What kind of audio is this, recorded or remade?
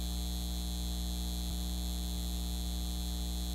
recorded